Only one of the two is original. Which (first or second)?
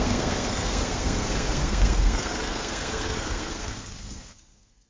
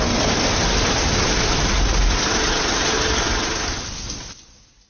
second